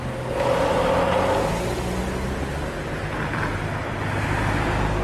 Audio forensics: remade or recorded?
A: recorded